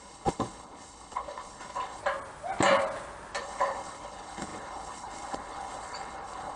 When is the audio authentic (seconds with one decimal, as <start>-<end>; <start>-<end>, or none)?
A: 2.0-3.4